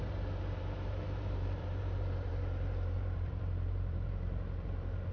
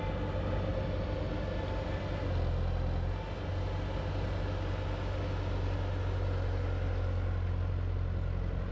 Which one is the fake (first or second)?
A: first